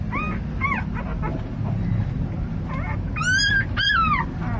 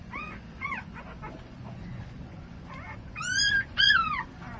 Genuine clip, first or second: first